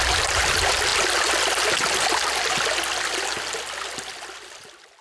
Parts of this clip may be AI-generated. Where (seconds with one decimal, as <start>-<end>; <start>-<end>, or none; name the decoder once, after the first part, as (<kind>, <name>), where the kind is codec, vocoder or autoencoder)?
none